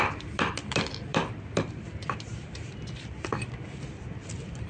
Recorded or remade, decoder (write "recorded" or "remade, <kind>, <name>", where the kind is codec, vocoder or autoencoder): remade, vocoder, BigVGAN v2